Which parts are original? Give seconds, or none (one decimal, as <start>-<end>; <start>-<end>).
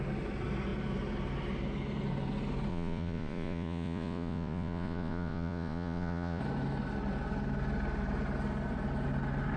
0.0-2.7; 6.4-9.6